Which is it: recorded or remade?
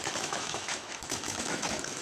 remade